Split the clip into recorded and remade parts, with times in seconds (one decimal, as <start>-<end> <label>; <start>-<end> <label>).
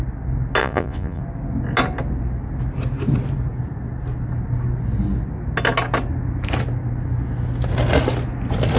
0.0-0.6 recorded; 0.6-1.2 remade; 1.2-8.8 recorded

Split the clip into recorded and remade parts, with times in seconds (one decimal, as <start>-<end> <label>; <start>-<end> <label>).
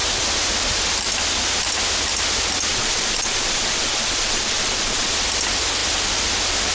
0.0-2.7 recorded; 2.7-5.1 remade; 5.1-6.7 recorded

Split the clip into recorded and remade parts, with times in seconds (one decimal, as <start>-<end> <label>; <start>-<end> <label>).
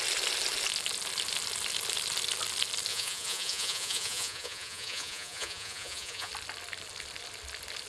0.0-2.9 recorded; 2.9-6.3 remade; 6.3-7.9 recorded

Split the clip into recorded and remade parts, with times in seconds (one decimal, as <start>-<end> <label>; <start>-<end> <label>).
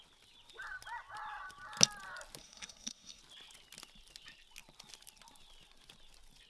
0.0-2.4 recorded; 2.4-3.2 remade; 3.2-6.5 recorded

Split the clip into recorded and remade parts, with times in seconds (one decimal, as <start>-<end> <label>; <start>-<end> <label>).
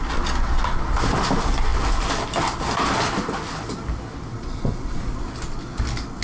0.0-4.3 recorded; 4.3-5.0 remade; 5.0-6.2 recorded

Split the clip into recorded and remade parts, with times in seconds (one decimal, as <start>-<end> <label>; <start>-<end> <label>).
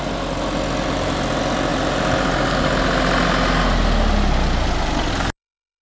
0.0-1.7 recorded; 1.7-2.5 remade; 2.5-5.8 recorded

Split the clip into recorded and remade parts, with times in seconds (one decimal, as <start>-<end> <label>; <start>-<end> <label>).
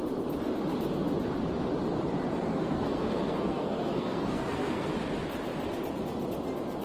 0.0-2.5 recorded; 2.5-4.9 remade; 4.9-6.8 recorded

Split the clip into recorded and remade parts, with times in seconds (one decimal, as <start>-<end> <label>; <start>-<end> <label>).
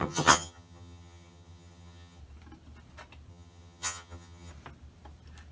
0.0-2.2 remade; 2.2-3.3 recorded; 3.3-4.5 remade; 4.5-5.5 recorded